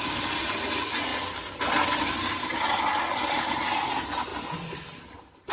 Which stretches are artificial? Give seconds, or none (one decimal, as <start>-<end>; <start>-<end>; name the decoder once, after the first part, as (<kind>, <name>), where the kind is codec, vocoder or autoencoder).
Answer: none